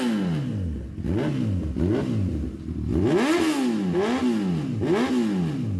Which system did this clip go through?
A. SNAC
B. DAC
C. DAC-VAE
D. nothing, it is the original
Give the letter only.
D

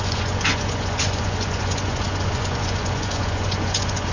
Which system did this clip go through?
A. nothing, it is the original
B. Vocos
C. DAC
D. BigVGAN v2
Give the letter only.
B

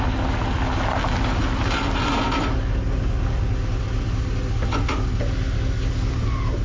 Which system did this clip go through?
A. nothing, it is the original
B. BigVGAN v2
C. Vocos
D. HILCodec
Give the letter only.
A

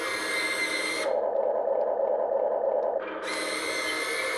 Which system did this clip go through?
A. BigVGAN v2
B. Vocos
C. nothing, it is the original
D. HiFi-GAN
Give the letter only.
C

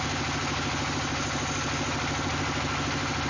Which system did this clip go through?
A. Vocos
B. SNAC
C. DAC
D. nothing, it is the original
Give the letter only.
D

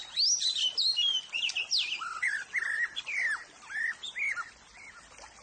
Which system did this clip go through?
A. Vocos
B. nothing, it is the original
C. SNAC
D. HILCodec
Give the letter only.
B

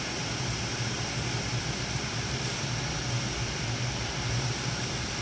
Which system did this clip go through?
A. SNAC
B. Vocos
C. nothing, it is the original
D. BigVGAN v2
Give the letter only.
D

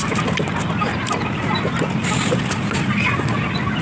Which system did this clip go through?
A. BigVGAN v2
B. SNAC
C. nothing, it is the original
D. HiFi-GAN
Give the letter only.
C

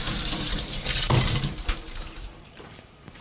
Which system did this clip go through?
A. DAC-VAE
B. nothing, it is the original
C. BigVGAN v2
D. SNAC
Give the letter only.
C